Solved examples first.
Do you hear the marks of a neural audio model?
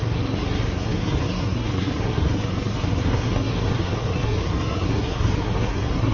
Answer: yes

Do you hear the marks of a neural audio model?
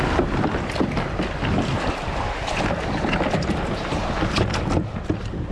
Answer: no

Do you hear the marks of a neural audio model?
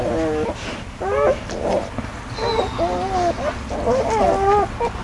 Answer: no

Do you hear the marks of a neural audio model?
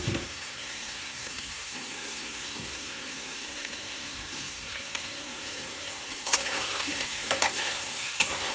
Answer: yes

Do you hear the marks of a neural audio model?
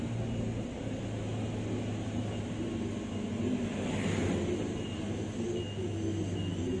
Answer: no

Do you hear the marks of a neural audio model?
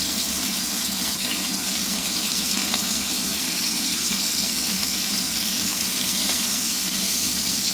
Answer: yes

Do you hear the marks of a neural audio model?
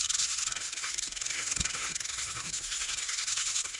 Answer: yes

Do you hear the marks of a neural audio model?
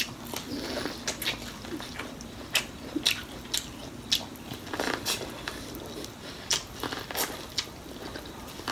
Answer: no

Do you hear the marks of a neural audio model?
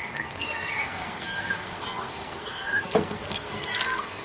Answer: yes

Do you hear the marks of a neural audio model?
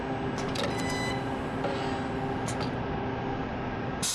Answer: no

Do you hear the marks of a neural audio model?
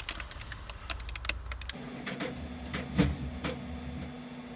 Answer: no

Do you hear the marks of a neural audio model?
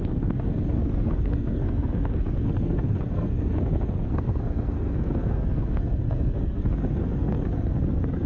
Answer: yes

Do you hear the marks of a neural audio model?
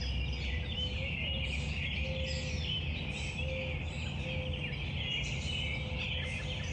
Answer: no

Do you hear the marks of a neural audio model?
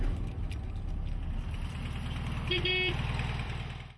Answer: no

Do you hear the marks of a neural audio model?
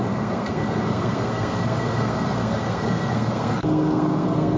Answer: yes